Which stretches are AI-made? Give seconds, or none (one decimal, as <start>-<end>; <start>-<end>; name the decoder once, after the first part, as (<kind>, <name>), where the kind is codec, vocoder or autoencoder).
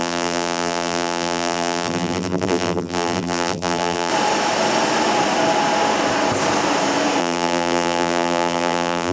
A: 0.0-4.1 (vocoder, BigVGAN v2); 7.2-9.1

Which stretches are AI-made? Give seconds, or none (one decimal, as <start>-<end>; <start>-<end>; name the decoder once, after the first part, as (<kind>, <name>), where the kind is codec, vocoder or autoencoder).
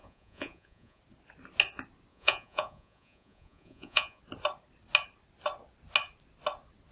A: 0.0-1.0 (vocoder, Vocos); 2.1-4.2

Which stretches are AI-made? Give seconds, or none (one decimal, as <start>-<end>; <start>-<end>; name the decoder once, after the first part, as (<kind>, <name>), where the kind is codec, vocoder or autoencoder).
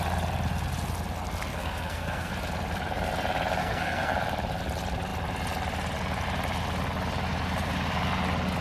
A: 1.5-2.3 (codec, SNAC); 3.6-4.1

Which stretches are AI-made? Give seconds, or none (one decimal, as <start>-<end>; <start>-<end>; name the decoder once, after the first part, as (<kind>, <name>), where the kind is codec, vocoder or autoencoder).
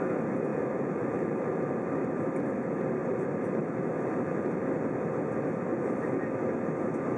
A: 0.5-1.9 (vocoder, BigVGAN v2); 3.0-5.0; 5.7-6.3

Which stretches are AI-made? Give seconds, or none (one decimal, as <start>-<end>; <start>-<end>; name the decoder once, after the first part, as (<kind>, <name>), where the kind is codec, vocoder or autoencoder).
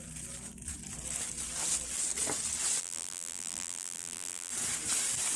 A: 2.8-4.5 (vocoder, BigVGAN v2)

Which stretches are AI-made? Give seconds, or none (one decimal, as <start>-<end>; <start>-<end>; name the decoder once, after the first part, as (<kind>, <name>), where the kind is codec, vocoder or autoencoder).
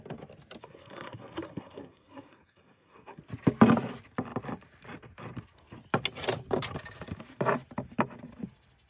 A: 0.6-3.2 (codec, SNAC)